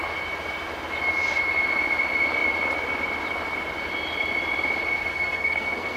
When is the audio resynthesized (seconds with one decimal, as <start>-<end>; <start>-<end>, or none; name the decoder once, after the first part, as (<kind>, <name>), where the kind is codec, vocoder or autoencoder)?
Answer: 5.1-6.0 (codec, SNAC)